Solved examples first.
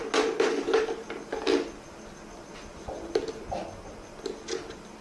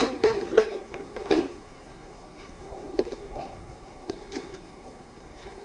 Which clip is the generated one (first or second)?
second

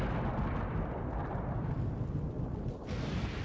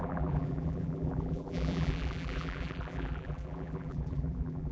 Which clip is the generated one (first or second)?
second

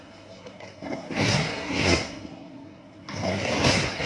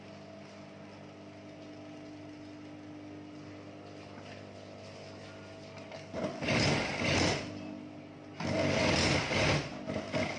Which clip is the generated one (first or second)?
first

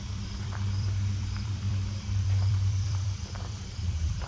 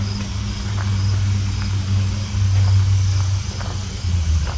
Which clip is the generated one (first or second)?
first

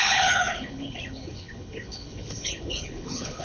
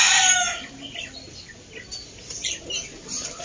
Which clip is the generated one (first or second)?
first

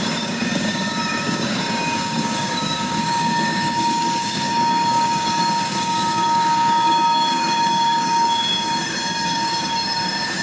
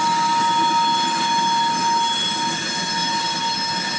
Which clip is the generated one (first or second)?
first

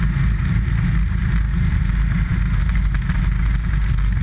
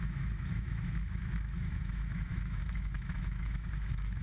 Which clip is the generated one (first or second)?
second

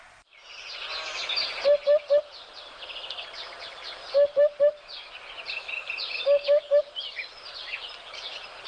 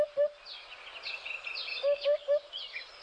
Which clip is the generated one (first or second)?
first